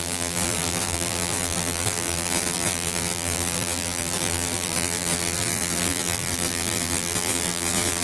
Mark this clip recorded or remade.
remade